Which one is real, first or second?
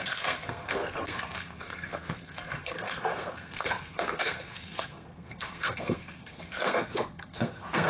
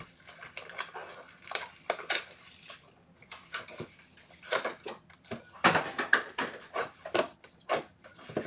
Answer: second